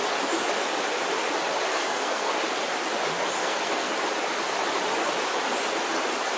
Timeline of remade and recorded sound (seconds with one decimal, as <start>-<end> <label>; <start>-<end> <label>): 0.0-1.7 recorded; 1.7-2.3 remade; 2.3-3.4 recorded; 3.4-3.9 remade; 3.9-6.4 recorded